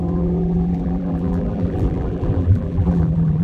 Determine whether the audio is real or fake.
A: fake